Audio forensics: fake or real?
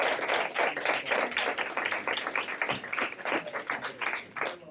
real